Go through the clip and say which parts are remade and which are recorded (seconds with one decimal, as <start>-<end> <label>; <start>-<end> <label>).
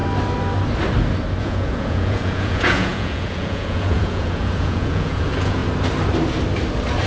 0.0-1.4 recorded; 1.4-5.6 remade; 5.6-7.1 recorded